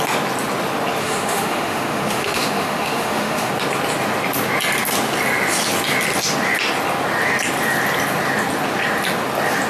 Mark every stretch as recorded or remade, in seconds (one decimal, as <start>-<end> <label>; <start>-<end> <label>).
0.0-1.0 recorded; 1.0-3.5 remade; 3.5-9.7 recorded